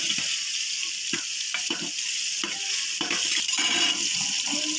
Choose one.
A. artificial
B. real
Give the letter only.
B